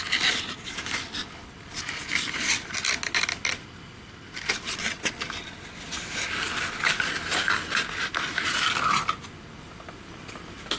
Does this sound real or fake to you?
real